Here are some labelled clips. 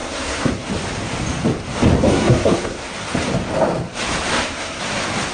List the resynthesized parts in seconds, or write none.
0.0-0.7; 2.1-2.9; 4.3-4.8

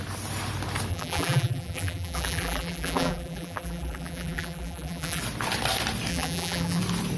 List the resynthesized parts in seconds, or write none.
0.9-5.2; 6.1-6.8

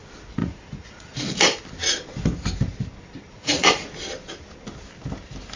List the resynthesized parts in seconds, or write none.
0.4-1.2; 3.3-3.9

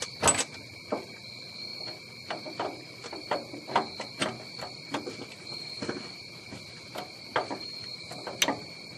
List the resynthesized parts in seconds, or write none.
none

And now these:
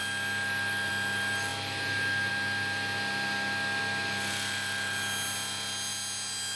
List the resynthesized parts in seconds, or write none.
none